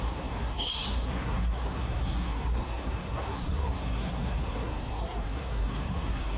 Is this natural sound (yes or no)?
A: no